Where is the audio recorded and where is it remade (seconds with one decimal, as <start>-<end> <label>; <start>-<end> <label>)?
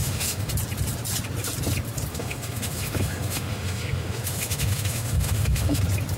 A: 0.0-0.5 remade; 0.5-2.1 recorded; 2.1-5.8 remade; 5.8-6.2 recorded